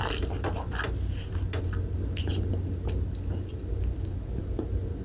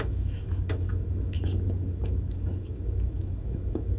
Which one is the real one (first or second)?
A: first